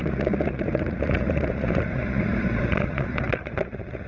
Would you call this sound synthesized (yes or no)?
yes